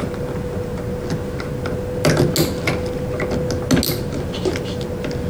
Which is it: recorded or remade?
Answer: recorded